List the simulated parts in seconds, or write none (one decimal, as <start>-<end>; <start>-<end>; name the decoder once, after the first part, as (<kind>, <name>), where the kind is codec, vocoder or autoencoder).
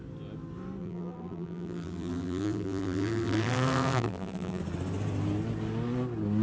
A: 0.8-4.6 (vocoder, BigVGAN v2)